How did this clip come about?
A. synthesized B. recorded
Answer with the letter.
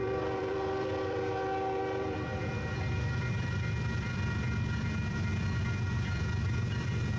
A